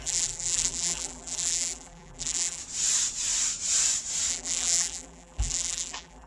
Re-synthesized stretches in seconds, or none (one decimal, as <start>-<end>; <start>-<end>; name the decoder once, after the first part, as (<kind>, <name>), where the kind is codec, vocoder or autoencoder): 0.0-2.6 (vocoder, BigVGAN v2); 4.3-6.3